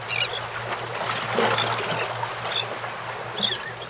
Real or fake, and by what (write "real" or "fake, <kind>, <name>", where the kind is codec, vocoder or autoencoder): real